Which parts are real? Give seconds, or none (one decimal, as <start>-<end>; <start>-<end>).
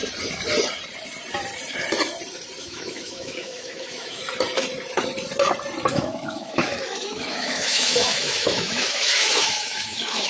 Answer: 0.0-2.6; 4.2-5.9